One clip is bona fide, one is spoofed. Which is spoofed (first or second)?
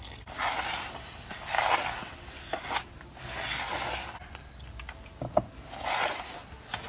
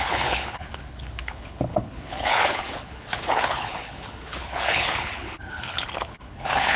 second